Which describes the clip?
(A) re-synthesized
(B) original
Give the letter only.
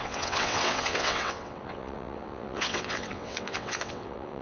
A